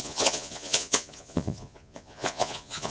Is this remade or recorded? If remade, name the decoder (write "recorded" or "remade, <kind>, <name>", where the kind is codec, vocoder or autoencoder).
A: remade, vocoder, Vocos